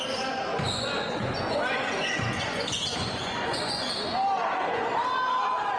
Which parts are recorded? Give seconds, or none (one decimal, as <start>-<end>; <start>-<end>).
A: 0.0-0.5; 3.9-4.4; 4.9-5.8